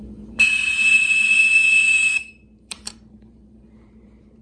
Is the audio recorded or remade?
remade